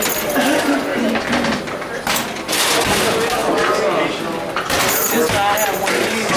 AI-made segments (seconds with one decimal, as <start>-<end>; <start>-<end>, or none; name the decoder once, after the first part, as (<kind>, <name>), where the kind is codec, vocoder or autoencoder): none